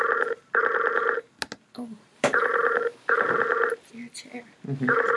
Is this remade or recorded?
recorded